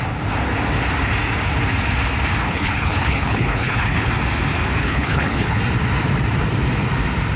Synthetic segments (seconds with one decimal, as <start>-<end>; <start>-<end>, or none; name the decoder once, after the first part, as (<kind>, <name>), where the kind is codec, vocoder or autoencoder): 2.4-4.1 (codec, HILCodec); 4.8-5.6